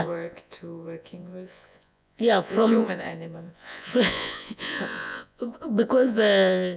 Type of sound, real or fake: fake